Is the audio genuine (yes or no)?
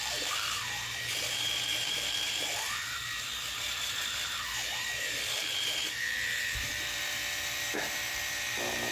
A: no